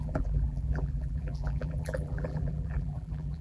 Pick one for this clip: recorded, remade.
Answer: remade